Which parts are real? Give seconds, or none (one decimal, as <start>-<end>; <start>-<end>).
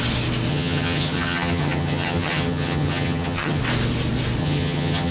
0.0-0.5; 3.6-4.4